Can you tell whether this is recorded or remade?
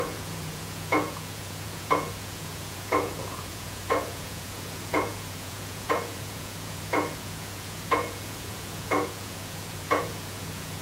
remade